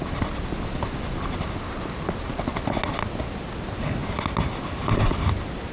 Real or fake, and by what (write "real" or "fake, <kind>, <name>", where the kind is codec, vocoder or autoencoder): real